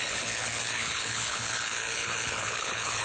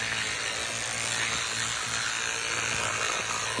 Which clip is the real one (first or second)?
second